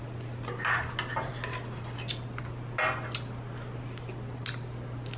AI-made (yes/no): no